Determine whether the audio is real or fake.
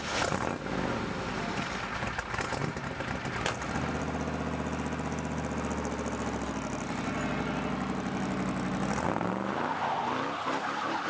real